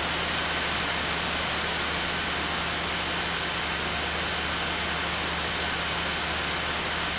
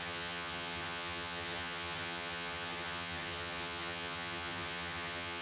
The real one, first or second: first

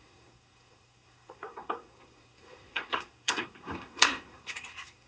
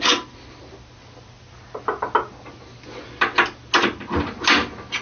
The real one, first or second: second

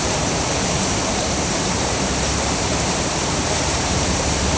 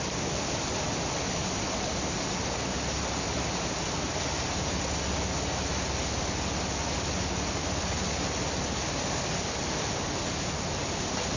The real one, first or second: second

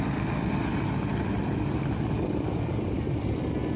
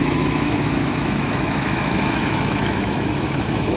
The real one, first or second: first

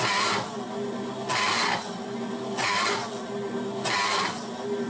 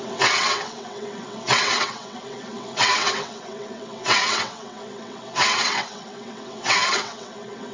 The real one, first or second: first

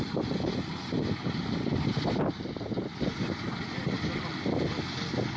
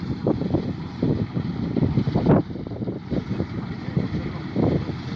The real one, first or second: first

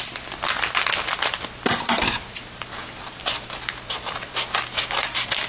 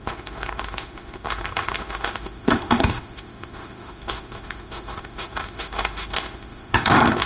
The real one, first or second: first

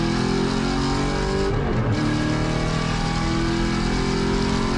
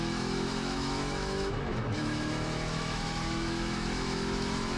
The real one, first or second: first